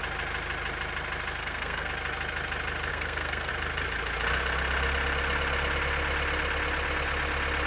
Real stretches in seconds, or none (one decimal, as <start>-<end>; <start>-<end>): 0.0-1.4; 1.9-2.9; 3.5-7.7